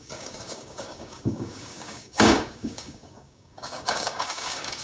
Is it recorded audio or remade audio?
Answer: remade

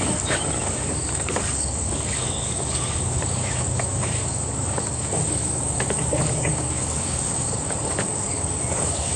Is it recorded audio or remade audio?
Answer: remade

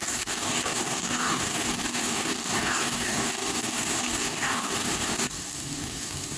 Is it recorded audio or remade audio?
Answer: remade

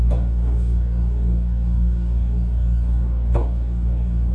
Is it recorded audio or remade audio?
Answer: remade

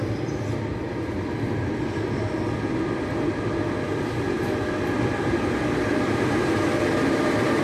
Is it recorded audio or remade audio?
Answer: recorded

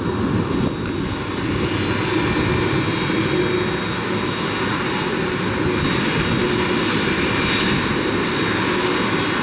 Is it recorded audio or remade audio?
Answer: recorded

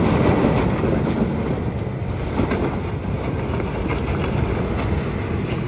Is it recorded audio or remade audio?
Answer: recorded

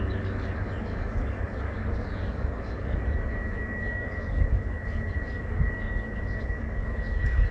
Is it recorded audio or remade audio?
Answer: remade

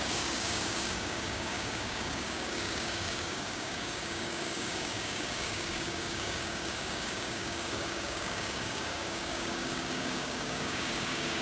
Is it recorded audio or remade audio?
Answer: remade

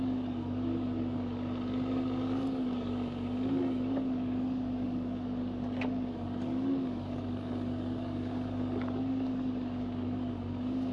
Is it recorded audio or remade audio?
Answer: remade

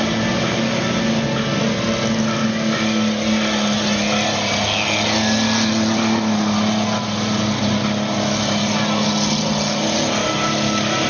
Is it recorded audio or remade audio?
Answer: recorded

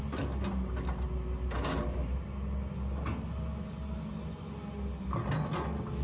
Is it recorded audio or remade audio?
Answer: recorded